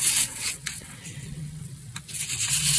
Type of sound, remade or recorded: remade